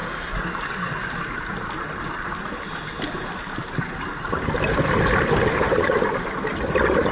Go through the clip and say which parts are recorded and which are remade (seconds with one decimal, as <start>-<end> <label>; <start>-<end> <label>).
0.0-7.1 recorded